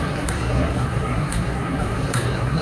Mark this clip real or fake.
fake